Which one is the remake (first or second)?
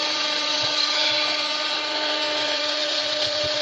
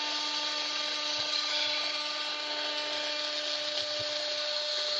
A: first